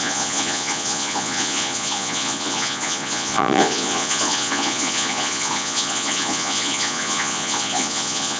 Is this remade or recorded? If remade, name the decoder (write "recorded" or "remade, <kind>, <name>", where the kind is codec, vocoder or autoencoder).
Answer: remade, vocoder, Vocos